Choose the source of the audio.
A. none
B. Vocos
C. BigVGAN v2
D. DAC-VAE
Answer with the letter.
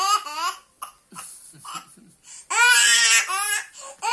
A